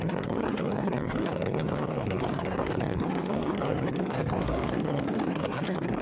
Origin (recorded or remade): remade